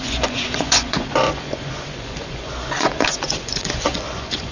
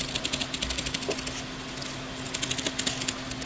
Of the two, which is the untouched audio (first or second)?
second